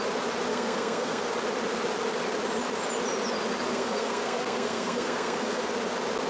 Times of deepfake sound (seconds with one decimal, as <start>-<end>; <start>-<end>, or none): 0.5-1.3; 3.7-5.6